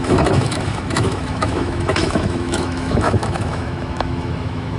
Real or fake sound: fake